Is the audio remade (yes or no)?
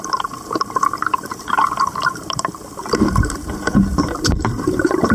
yes